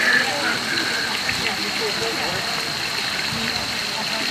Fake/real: real